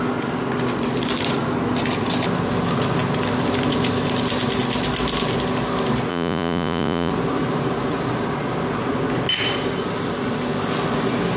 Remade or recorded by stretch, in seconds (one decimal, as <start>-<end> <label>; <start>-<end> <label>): 0.0-6.1 recorded; 6.1-7.1 remade; 7.1-11.4 recorded